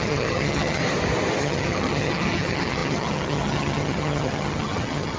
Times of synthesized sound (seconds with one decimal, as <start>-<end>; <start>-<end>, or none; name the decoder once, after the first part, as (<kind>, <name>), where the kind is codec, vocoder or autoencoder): 0.0-0.8 (vocoder, HiFi-GAN); 1.4-5.2